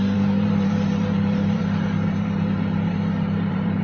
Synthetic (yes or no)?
yes